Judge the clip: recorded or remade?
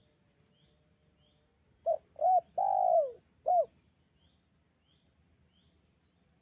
recorded